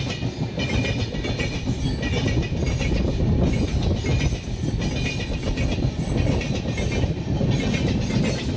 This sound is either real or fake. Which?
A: real